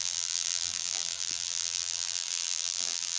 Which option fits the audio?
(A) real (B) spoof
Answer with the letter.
B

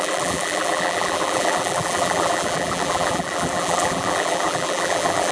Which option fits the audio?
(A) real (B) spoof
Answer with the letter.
B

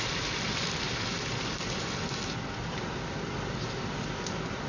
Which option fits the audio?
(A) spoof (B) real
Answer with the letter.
A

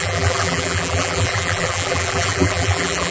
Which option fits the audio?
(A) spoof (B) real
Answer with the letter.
A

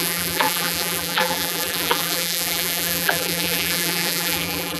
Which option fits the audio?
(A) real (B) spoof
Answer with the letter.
B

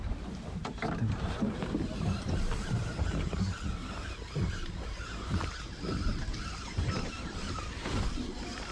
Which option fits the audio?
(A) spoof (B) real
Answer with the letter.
A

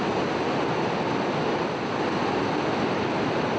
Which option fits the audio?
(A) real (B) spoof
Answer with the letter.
A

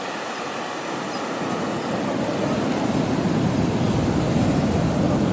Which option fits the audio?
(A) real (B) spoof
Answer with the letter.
A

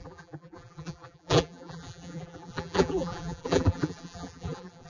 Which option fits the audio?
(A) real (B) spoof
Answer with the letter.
B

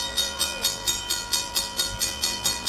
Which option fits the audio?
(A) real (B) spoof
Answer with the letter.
B